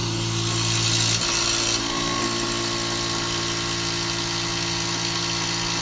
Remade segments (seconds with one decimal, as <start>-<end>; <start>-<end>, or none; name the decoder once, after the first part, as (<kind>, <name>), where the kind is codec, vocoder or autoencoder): 1.8-2.2 (codec, SNAC)